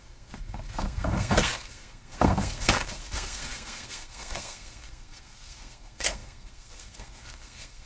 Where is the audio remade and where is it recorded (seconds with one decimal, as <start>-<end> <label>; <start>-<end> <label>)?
0.0-7.9 remade